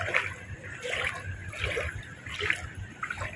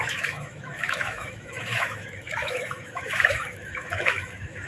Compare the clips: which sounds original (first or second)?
first